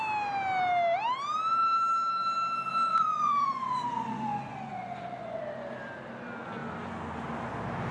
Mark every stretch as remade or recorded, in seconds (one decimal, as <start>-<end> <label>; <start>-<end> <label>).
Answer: 0.0-2.9 recorded; 2.9-5.4 remade; 5.4-7.9 recorded